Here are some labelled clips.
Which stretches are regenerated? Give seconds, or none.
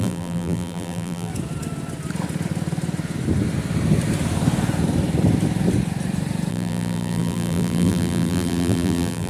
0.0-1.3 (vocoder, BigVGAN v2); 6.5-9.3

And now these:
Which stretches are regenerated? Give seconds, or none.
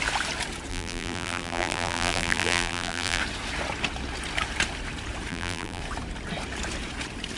0.7-3.2 (vocoder, BigVGAN v2); 5.3-5.8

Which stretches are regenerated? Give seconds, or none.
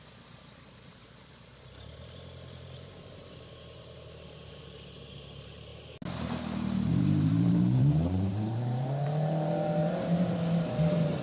0.0-5.7 (vocoder, BigVGAN v2); 6.9-11.2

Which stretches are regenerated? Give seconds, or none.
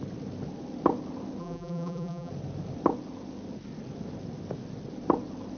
1.4-2.3 (vocoder, BigVGAN v2)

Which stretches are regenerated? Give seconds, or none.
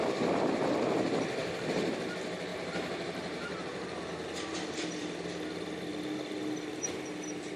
2.5-3.7 (vocoder, BigVGAN v2)